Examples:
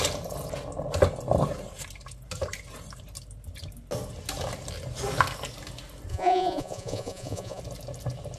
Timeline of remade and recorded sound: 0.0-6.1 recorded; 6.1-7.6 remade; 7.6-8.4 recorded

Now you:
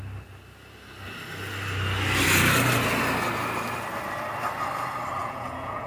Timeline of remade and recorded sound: 0.0-5.2 recorded; 5.2-5.9 remade

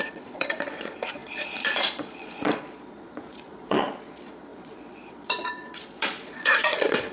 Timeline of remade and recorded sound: 0.0-7.1 remade

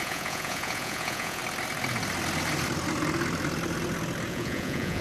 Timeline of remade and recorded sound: 0.0-1.4 remade; 1.4-4.3 recorded; 4.3-5.0 remade